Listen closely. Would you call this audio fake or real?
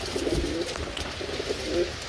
real